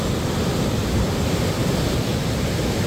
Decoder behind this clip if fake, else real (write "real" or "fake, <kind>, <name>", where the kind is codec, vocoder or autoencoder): real